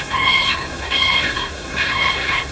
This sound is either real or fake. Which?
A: fake